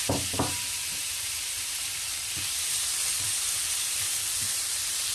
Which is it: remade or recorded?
remade